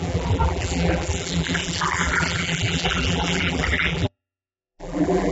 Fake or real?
fake